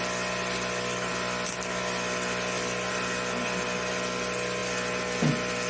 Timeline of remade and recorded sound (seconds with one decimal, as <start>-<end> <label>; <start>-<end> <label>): 0.0-5.7 recorded